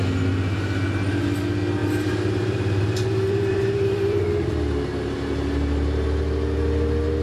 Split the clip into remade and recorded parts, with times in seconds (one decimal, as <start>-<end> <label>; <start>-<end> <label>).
0.0-1.8 recorded; 1.8-4.5 remade; 4.5-7.2 recorded